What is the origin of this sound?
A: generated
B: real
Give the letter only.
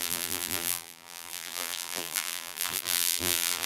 A